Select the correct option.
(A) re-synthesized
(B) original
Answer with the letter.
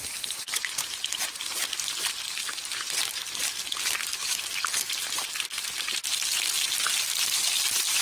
B